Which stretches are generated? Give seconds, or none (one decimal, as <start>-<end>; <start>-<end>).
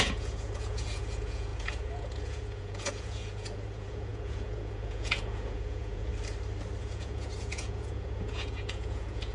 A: 0.0-6.1; 6.8-9.3